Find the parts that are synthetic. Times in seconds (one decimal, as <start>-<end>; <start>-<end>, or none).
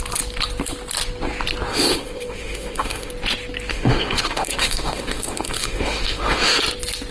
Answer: 1.7-3.1; 3.7-6.6